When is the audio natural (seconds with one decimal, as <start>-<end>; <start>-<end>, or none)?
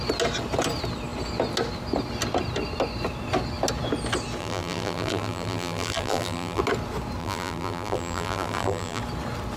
0.0-4.4; 6.6-7.2; 9.0-9.6